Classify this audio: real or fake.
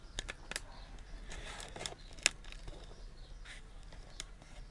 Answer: real